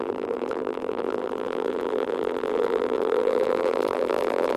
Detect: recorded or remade remade